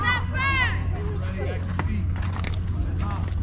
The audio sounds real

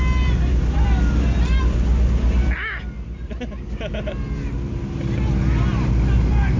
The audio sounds real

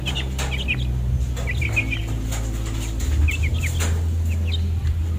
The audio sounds real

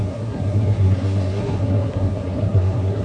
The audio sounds fake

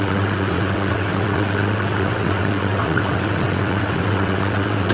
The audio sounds fake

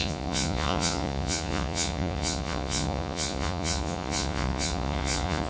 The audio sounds fake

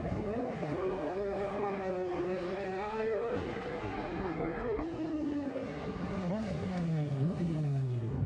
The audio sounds fake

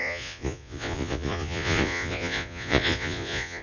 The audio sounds fake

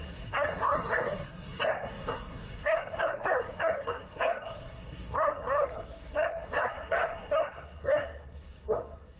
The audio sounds fake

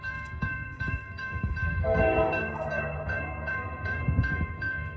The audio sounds fake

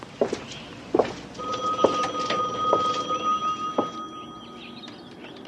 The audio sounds real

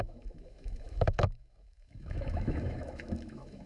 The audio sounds fake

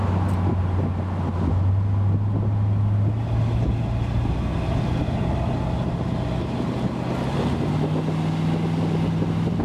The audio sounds real